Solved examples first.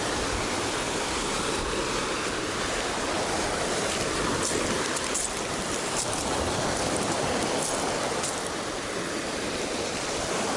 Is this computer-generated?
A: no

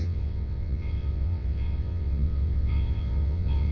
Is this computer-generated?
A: yes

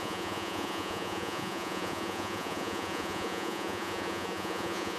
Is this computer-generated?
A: yes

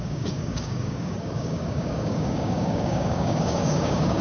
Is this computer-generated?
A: yes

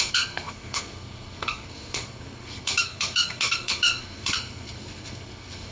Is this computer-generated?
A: yes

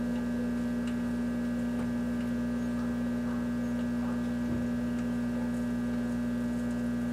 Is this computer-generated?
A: no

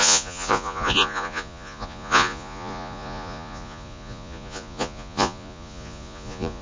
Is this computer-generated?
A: yes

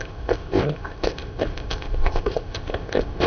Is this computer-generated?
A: yes